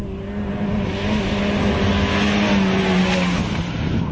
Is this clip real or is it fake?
real